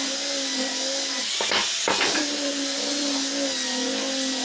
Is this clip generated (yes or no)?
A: no